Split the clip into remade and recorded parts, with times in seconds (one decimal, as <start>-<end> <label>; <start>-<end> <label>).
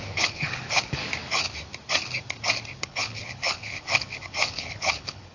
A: 0.0-1.0 remade; 1.0-2.8 recorded; 2.8-5.3 remade